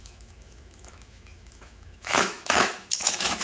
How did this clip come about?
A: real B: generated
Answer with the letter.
B